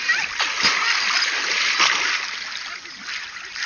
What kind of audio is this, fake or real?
real